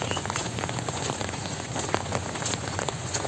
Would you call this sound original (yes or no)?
no